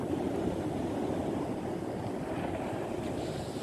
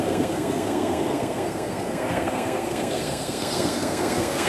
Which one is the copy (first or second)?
second